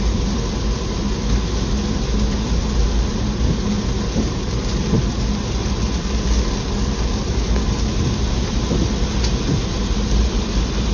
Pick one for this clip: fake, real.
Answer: real